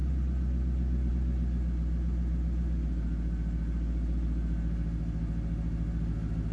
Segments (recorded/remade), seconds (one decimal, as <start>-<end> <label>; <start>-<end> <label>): 0.0-6.5 recorded